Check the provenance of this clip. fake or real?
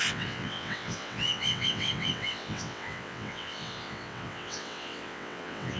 fake